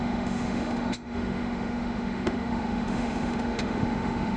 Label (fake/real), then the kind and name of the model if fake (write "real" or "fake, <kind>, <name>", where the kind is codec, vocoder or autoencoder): fake, autoencoder, DAC-VAE